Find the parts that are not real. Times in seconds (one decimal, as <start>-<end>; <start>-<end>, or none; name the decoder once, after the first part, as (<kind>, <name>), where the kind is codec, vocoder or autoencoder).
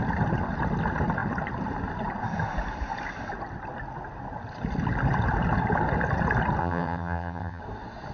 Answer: 6.6-7.6 (vocoder, HiFi-GAN)